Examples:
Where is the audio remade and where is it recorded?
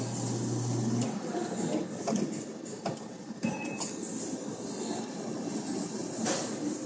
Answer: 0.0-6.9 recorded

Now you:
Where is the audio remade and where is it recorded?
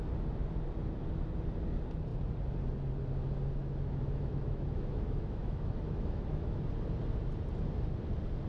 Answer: 0.0-3.6 recorded; 3.6-6.6 remade; 6.6-8.5 recorded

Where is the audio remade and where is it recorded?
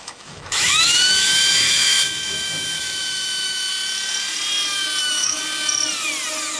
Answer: 0.0-3.7 remade; 3.7-5.0 recorded; 5.0-5.4 remade; 5.4-6.6 recorded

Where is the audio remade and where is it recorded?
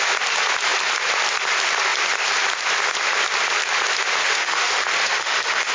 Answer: 0.0-4.2 recorded; 4.2-5.7 remade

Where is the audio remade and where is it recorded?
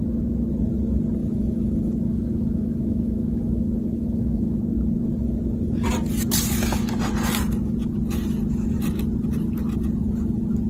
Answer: 0.0-1.2 recorded; 1.2-4.6 remade; 4.6-10.7 recorded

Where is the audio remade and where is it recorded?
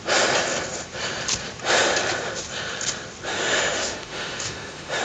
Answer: 0.0-3.3 recorded; 3.3-5.0 remade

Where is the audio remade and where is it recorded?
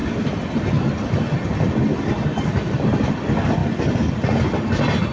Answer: 0.0-5.1 recorded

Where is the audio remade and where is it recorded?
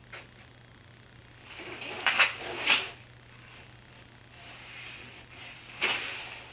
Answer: 0.0-6.5 recorded